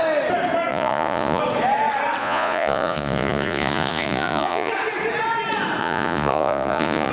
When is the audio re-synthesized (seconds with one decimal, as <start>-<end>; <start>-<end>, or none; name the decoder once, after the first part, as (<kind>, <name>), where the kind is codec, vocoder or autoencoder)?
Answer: 0.7-1.4 (vocoder, Vocos); 2.2-4.7; 5.8-7.1